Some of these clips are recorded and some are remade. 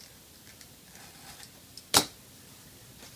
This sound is recorded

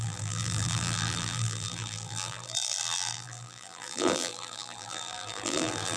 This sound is remade